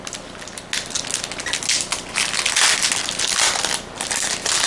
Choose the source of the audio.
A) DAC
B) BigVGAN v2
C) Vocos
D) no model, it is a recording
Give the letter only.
D